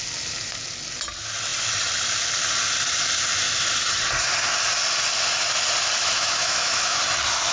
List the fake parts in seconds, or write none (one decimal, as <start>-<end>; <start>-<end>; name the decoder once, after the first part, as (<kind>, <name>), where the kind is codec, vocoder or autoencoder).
6.0-7.0 (autoencoder, DAC-VAE)